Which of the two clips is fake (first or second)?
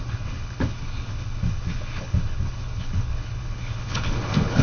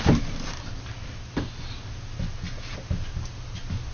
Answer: first